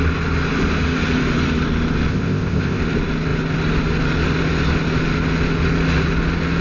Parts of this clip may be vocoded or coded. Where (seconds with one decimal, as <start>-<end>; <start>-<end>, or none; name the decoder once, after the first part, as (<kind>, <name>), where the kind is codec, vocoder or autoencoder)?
2.1-2.8 (codec, ZipCodec)